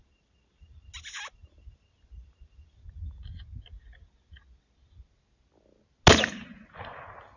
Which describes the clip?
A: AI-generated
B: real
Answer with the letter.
B